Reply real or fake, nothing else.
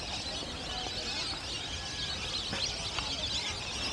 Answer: real